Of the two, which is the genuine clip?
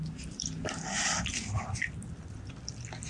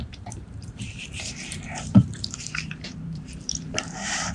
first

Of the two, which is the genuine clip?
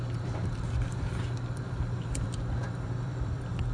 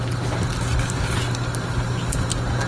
second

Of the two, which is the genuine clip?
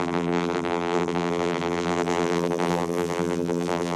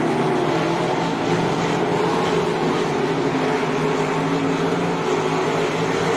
second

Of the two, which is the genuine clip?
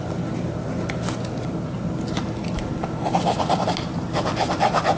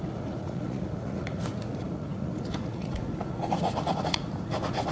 first